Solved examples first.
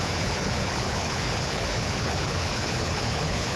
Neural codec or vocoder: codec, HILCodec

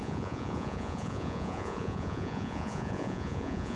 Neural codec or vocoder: vocoder, Vocos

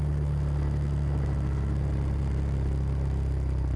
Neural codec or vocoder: none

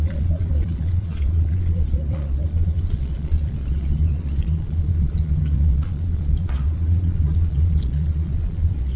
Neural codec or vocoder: vocoder, Vocos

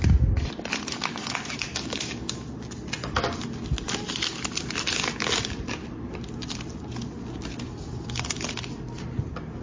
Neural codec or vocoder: none